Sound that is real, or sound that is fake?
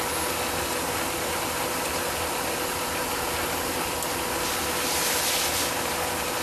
real